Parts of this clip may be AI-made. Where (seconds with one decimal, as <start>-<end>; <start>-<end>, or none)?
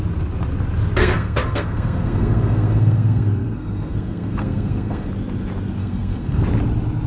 1.0-5.1; 5.8-6.4